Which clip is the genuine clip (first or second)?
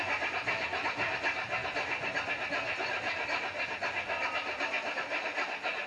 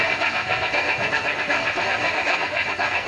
first